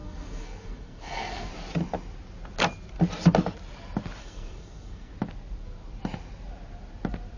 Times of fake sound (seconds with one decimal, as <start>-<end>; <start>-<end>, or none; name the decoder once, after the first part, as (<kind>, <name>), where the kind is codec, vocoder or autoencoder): 0.0-1.5 (codec, SNAC); 4.2-5.1